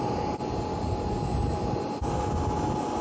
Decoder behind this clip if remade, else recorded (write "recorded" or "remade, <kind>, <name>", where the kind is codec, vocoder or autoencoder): recorded